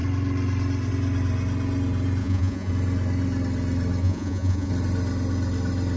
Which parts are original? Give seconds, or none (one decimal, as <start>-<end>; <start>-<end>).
0.0-2.2; 2.7-4.0; 4.7-6.0